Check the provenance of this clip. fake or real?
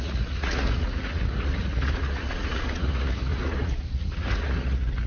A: fake